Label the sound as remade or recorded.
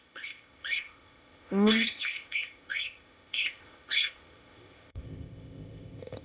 remade